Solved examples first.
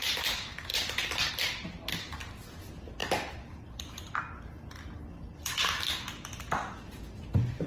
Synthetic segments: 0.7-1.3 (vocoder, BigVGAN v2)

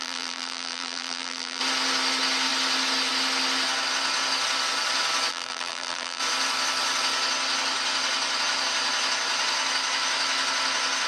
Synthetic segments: 0.0-1.6 (vocoder, BigVGAN v2); 5.3-6.2

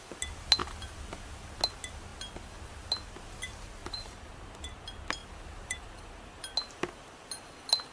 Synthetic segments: 3.8-4.6 (vocoder, BigVGAN v2); 5.2-6.4

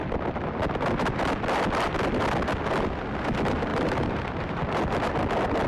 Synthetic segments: 3.7-4.6 (vocoder, BigVGAN v2)

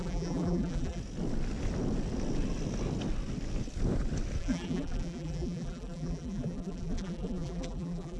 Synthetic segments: 0.0-1.0 (vocoder, BigVGAN v2); 4.4-8.2

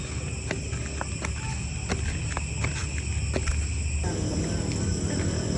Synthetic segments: none

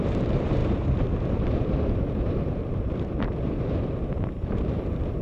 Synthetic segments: 0.0-5.2 (vocoder, BigVGAN v2)